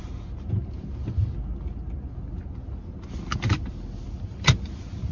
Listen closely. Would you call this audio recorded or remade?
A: recorded